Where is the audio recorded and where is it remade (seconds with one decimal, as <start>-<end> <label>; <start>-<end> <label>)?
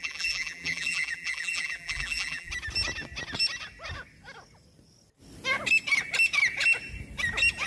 0.0-2.5 remade; 2.5-7.7 recorded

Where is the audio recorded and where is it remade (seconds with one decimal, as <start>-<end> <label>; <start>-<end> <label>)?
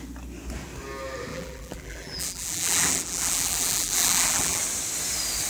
0.0-1.3 recorded; 1.3-4.6 remade; 4.6-5.5 recorded